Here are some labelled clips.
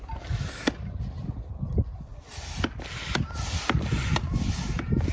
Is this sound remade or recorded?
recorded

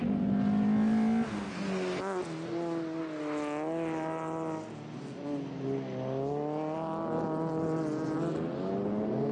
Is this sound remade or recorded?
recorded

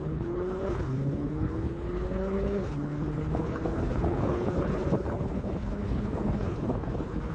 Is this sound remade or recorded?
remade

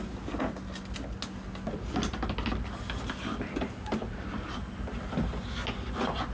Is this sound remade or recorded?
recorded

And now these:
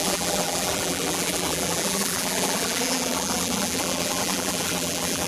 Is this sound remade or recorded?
remade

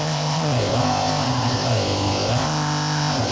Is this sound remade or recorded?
remade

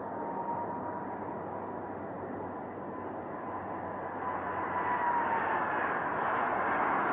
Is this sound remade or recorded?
recorded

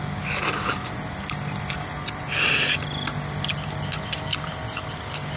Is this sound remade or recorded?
recorded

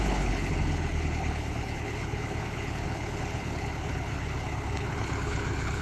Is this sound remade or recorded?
remade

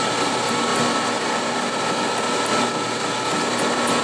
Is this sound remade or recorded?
recorded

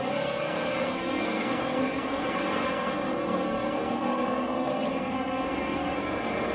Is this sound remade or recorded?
remade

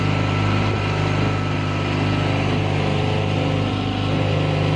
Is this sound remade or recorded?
recorded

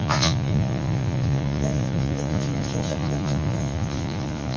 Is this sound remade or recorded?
remade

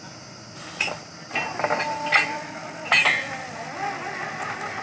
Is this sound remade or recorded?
recorded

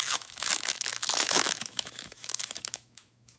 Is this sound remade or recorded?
remade